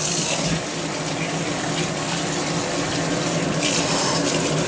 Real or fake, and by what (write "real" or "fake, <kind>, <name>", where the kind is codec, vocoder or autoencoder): real